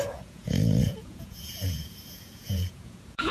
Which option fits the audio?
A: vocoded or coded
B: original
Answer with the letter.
A